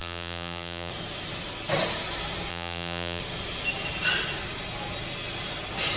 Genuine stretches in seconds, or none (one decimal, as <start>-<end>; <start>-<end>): 0.9-2.5; 3.2-6.0